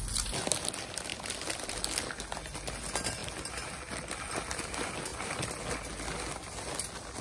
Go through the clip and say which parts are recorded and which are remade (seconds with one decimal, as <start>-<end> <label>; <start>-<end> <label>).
0.0-7.2 recorded